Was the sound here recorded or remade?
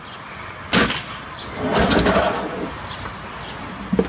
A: recorded